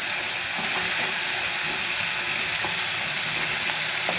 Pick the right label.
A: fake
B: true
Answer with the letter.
B